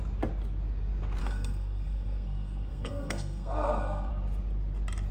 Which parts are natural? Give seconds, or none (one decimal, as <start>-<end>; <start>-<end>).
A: 0.0-1.2; 4.1-5.1